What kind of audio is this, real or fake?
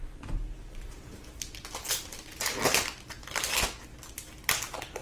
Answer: real